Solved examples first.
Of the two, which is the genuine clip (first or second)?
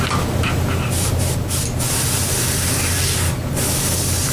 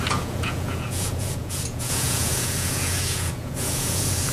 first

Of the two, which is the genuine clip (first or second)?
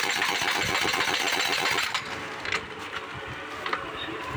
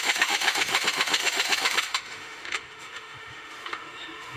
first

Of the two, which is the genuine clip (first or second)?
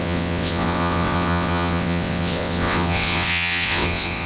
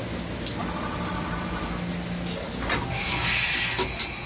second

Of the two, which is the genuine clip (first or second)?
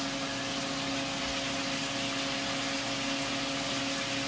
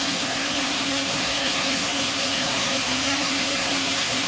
first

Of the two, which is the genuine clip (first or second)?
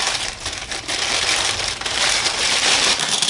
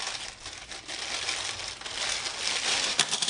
second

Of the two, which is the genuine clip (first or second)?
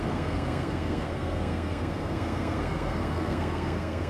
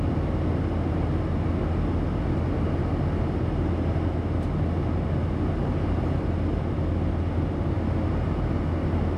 second